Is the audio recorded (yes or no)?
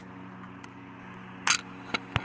yes